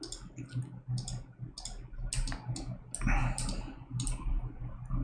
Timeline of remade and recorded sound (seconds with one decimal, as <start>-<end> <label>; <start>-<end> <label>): 0.0-5.0 recorded